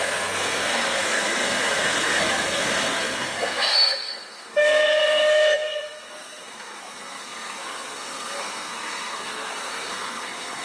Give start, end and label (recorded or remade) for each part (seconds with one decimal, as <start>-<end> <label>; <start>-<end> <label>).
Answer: 0.0-10.6 remade